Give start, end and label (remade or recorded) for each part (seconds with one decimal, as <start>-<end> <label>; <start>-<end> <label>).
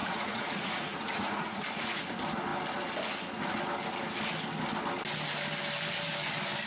0.0-2.0 remade; 2.0-6.7 recorded